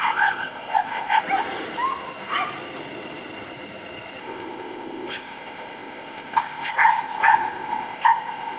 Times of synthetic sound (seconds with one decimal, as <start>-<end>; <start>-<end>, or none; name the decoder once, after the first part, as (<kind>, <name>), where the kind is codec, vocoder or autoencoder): 0.0-1.2 (codec, ZipCodec); 4.2-8.6